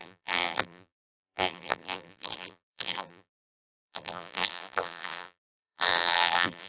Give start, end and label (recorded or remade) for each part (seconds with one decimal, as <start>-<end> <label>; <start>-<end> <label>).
0.0-6.7 remade